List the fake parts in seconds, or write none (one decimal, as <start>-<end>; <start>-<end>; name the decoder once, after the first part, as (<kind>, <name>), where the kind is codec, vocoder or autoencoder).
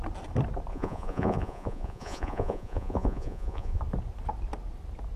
0.7-3.8 (vocoder, Vocos)